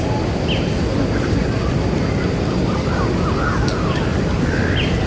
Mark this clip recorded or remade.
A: recorded